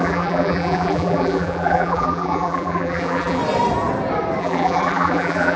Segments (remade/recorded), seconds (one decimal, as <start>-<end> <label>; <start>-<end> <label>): 0.0-3.4 remade; 3.4-4.4 recorded; 4.4-5.6 remade